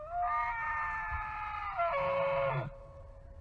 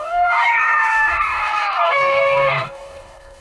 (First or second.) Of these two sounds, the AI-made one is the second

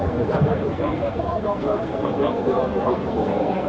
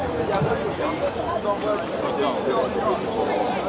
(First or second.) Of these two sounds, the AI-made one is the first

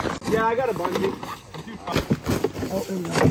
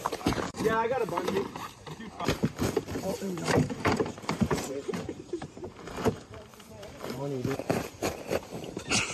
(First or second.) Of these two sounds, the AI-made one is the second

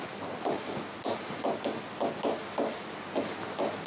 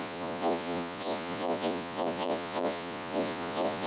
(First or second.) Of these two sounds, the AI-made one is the second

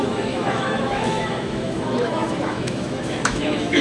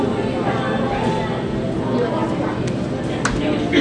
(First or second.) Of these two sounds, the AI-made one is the first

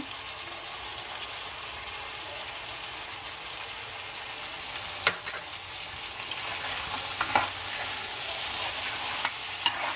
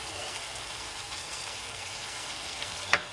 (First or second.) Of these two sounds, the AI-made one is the second